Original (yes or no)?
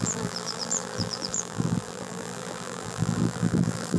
no